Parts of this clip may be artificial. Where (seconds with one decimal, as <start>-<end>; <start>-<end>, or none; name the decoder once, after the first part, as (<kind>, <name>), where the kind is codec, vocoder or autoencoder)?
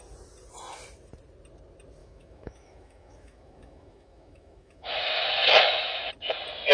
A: 2.0-6.0 (autoencoder, DAC-VAE)